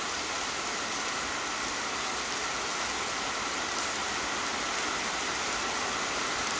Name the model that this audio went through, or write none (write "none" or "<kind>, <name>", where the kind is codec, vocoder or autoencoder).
none